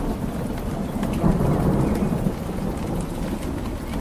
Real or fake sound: real